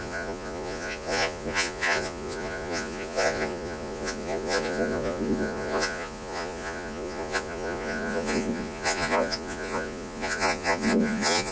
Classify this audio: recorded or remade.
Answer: remade